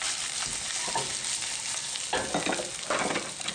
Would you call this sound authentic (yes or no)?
yes